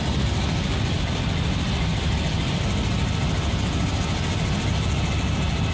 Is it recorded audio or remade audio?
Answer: recorded